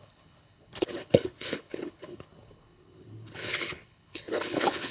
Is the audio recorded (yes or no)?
no